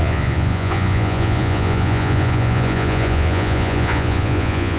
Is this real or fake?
fake